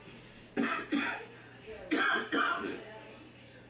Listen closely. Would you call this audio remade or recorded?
recorded